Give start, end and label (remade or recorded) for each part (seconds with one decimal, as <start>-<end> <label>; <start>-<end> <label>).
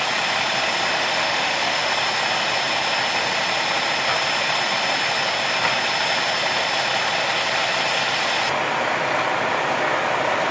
0.0-0.9 recorded; 0.9-1.9 remade; 1.9-10.5 recorded